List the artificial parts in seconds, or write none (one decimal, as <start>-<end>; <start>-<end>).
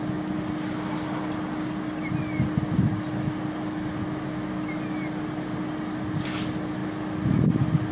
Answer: none